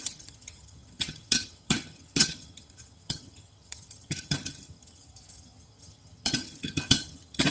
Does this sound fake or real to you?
fake